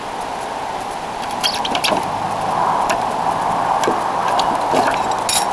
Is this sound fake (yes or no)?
no